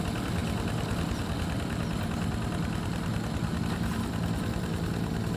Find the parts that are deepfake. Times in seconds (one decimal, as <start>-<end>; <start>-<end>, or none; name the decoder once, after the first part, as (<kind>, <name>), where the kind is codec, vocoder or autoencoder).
none

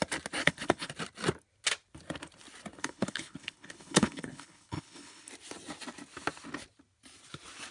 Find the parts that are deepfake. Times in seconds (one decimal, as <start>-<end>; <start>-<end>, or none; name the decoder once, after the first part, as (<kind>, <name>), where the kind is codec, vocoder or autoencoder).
0.4-0.9 (codec, HILCodec); 2.8-5.3